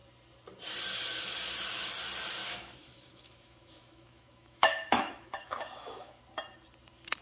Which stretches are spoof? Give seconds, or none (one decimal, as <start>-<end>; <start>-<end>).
2.4-6.2